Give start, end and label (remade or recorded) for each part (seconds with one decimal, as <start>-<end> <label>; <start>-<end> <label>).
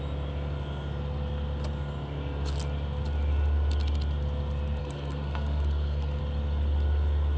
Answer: 0.0-4.8 recorded; 4.8-6.2 remade; 6.2-7.4 recorded